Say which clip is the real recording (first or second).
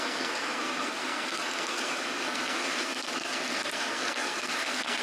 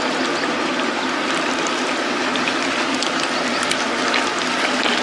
second